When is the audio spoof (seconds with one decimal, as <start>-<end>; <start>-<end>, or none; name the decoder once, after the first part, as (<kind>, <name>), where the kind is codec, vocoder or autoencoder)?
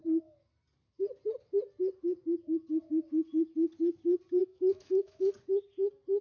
4.4-5.3 (autoencoder, DAC-VAE)